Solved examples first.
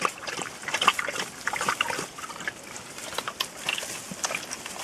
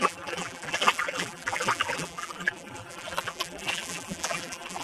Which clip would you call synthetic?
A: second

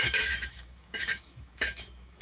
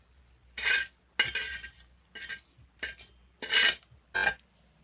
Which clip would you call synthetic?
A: first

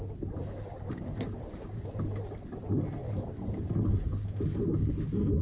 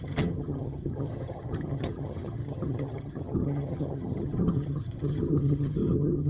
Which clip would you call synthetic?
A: second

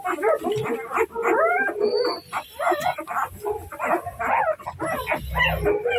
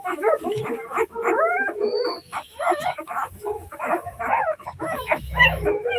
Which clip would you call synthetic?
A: second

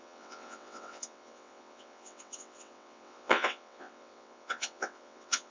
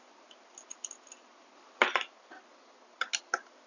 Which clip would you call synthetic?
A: first